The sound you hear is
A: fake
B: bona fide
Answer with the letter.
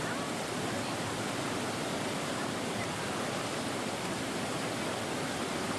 B